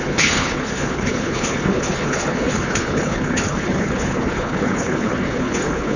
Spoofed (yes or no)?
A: yes